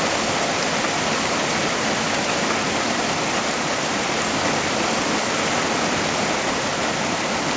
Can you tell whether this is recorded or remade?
recorded